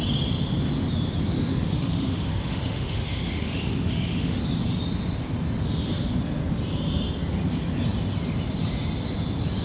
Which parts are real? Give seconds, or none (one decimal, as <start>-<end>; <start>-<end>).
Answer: 0.0-1.5; 4.4-9.6